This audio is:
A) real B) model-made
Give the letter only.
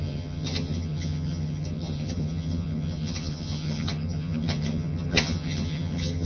B